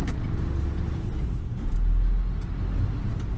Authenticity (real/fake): real